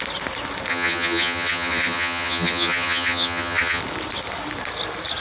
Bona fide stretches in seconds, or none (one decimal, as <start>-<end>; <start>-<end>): 0.0-0.7; 3.8-5.2